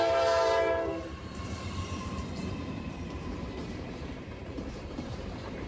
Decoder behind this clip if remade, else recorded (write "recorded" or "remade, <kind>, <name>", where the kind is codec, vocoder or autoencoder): remade, vocoder, BigVGAN v2